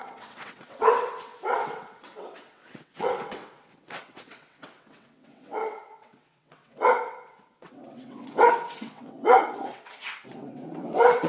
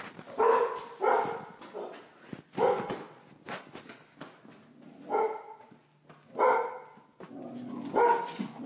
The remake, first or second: first